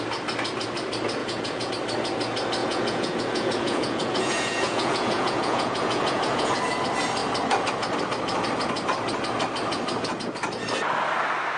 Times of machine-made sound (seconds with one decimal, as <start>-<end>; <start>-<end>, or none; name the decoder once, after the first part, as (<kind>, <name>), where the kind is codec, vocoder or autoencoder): 1.2-1.7 (vocoder, Vocos); 2.6-6.8